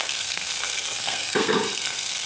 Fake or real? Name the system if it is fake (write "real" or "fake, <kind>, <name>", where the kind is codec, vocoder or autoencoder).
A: fake, codec, SNAC